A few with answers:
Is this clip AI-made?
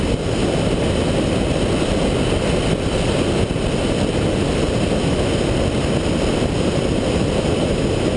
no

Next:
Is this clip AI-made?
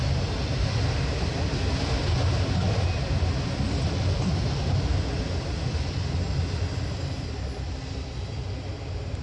no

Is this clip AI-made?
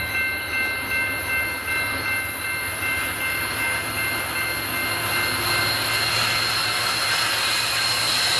no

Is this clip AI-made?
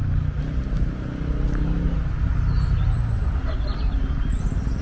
no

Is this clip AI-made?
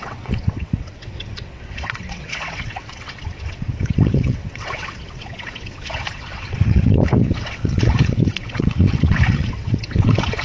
yes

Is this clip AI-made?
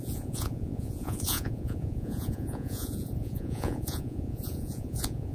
yes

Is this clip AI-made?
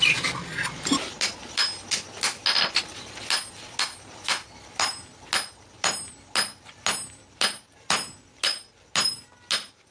no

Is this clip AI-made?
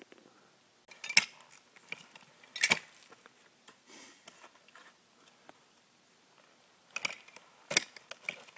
no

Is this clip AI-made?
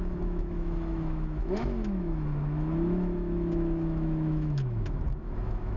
yes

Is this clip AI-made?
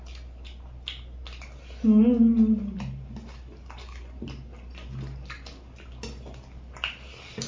no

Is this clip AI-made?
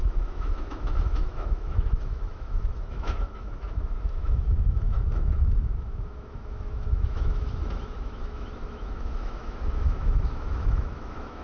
yes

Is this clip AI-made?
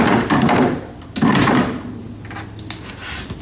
no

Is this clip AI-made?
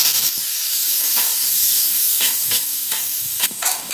yes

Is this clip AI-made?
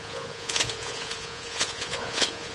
yes